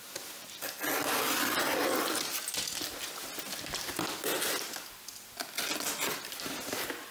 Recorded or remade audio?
recorded